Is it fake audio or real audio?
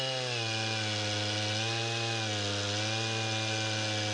real